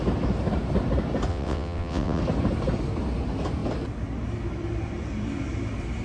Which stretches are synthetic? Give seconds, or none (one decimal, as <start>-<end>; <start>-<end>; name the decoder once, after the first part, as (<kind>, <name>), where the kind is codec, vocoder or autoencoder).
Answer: 1.3-2.2 (vocoder, WaveNeXt)